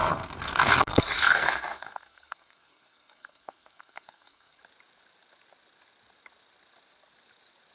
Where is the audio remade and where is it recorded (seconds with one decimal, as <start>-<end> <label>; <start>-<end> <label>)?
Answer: 0.0-4.6 remade; 4.6-7.7 recorded